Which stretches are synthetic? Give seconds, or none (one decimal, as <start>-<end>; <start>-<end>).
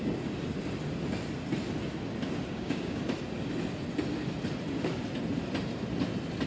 2.5-3.0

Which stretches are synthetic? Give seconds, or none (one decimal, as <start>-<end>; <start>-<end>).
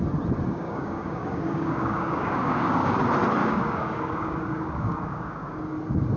0.5-3.0; 3.4-5.6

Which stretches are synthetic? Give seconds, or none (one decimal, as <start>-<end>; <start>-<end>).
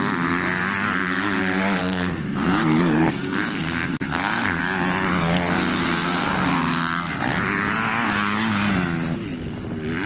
1.8-4.6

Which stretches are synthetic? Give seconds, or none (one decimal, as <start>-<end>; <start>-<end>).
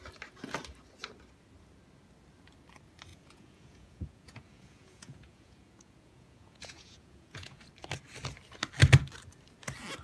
3.1-7.6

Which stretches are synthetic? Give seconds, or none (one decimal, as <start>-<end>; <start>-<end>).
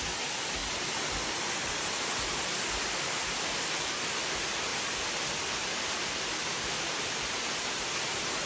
none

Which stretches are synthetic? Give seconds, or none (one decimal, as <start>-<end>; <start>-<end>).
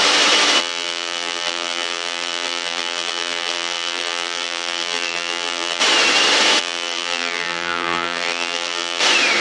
0.6-5.8; 6.6-9.0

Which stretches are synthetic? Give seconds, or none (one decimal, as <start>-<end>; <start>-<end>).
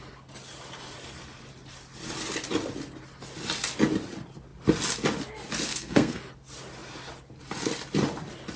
5.7-6.2